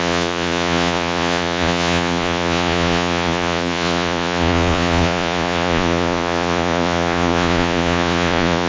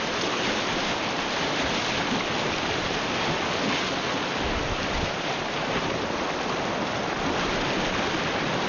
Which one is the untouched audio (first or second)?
second